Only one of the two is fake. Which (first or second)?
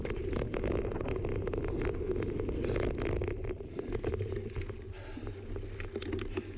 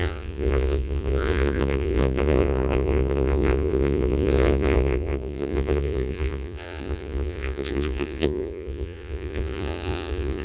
second